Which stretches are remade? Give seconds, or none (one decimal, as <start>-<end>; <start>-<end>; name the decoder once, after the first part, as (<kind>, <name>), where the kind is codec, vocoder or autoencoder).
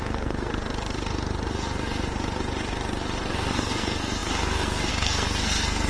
0.0-0.5 (codec, SNAC); 3.3-5.9